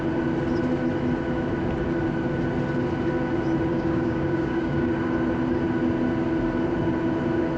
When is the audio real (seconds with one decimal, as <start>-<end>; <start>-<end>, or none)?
0.0-3.7; 4.9-7.6